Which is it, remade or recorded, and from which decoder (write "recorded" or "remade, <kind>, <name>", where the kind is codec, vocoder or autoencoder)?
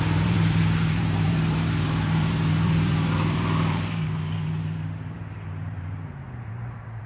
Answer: remade, vocoder, BigVGAN v2